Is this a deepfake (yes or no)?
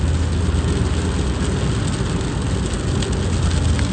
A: no